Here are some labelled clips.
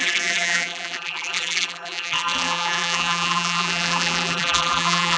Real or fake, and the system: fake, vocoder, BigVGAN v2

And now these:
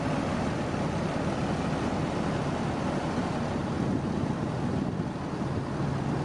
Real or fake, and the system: real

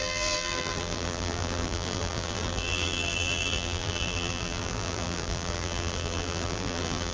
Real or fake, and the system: fake, vocoder, BigVGAN v2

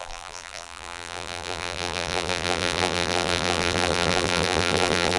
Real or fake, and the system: fake, vocoder, BigVGAN v2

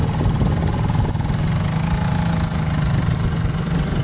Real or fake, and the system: real